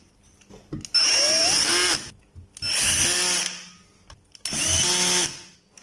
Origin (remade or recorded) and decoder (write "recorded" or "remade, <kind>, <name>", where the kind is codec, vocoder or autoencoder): recorded